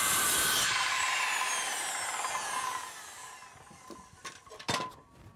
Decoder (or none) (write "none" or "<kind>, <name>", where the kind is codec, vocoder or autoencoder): vocoder, BigVGAN v2